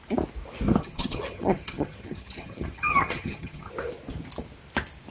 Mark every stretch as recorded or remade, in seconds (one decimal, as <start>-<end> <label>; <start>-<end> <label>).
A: 0.0-0.8 recorded; 0.8-3.7 remade; 3.7-5.1 recorded